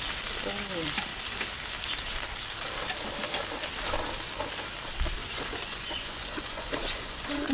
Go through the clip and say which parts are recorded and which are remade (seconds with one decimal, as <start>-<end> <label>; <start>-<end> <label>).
0.0-5.2 recorded; 5.2-7.5 remade

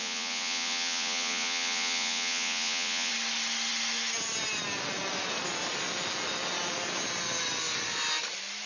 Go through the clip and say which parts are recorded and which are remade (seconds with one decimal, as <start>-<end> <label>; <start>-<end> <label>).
0.0-3.1 remade; 3.1-8.7 recorded

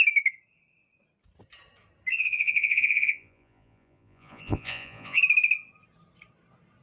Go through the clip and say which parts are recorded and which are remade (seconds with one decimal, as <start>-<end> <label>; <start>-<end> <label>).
0.0-2.1 recorded; 2.1-5.2 remade; 5.2-6.8 recorded

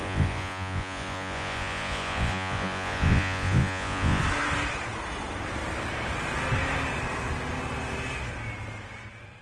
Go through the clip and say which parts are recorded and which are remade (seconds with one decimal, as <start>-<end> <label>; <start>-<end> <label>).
0.0-4.2 remade; 4.2-9.4 recorded

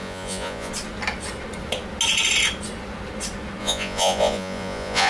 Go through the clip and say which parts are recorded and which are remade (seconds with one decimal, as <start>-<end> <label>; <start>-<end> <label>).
0.0-0.7 remade; 0.7-3.6 recorded; 3.6-5.1 remade

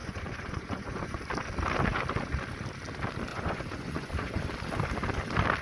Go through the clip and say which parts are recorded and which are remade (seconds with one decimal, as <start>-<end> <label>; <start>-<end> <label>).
0.0-1.2 remade; 1.2-3.3 recorded; 3.3-4.4 remade; 4.4-5.6 recorded

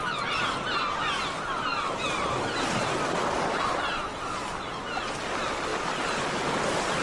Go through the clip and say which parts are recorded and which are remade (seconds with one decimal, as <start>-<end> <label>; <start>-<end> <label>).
0.0-7.0 recorded

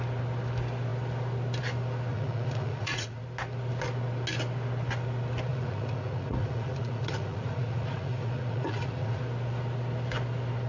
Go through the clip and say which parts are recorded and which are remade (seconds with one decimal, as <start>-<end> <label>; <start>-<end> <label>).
0.0-2.1 recorded; 2.1-3.2 remade; 3.2-5.5 recorded; 5.5-9.2 remade; 9.2-10.7 recorded